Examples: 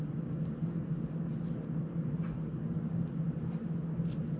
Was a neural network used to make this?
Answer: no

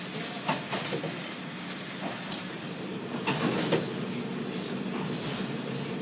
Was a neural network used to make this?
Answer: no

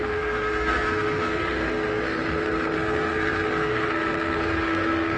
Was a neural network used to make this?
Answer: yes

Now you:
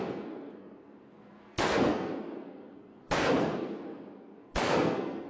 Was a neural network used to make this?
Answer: yes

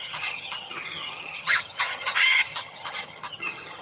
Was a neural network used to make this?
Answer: yes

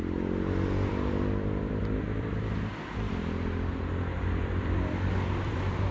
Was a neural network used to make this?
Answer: yes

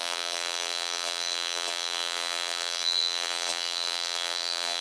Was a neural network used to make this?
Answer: yes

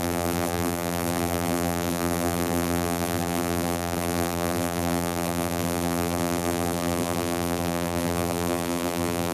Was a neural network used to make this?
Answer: yes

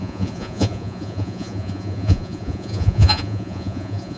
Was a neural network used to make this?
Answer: yes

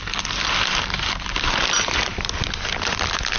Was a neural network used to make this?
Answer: no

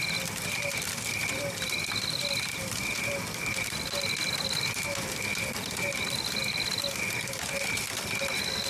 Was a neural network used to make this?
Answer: no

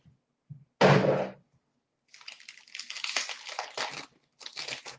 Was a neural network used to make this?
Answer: no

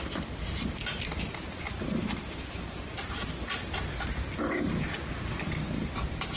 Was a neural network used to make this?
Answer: no